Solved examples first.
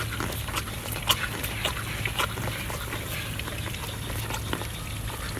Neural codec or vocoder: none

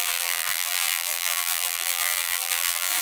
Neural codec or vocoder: vocoder, BigVGAN v2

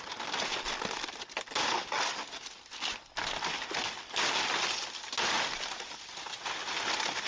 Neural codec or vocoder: none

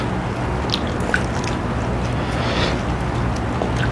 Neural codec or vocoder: none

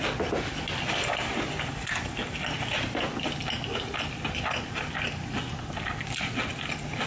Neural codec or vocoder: none